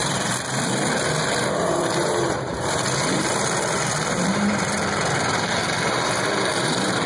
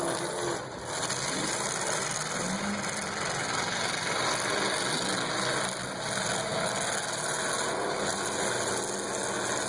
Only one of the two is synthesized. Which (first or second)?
first